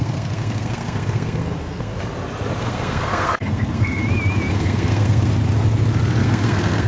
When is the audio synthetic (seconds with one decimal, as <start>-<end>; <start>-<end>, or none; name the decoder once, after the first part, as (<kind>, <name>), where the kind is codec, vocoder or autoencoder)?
0.0-1.9 (codec, SNAC); 2.6-4.0; 4.5-5.3; 6.2-6.9